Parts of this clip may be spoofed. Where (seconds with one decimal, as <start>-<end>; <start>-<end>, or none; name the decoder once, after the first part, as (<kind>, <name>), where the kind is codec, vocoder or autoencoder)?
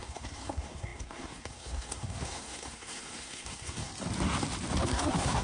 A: 0.0-3.9 (codec, SNAC); 4.8-5.4